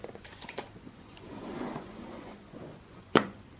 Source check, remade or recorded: remade